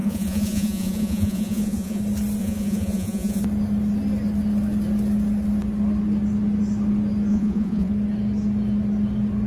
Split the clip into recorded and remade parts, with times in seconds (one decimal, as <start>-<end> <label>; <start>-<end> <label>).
0.0-2.0 remade; 2.0-2.4 recorded; 2.4-3.4 remade; 3.4-7.3 recorded; 7.3-7.9 remade; 7.9-9.5 recorded